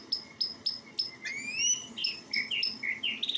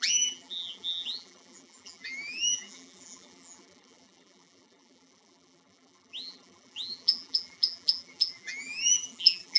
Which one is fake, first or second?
second